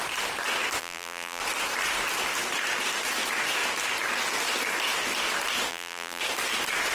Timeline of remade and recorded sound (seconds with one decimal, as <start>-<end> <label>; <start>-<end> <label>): 0.0-0.8 recorded; 0.8-1.4 remade; 1.4-5.7 recorded; 5.7-6.2 remade; 6.2-6.9 recorded